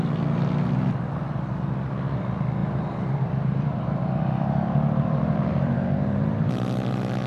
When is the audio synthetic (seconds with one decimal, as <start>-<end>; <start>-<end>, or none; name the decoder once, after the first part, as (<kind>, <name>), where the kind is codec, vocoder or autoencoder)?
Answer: 2.6-6.5 (vocoder, BigVGAN v2)